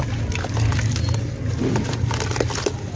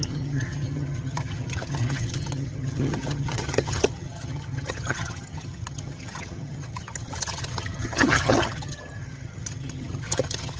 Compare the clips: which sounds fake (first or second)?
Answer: second